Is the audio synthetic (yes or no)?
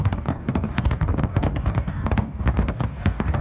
yes